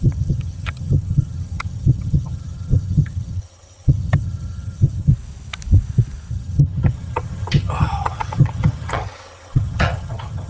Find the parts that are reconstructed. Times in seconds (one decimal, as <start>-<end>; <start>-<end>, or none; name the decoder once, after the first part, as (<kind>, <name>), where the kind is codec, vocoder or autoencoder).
0.0-5.1 (vocoder, HiFi-GAN); 6.3-10.5

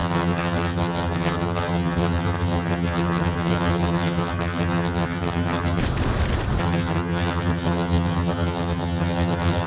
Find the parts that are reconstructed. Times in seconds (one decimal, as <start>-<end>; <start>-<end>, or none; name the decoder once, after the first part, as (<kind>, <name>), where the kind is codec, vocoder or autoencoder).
0.0-5.8 (vocoder, HiFi-GAN); 6.6-9.7